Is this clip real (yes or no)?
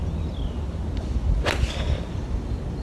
yes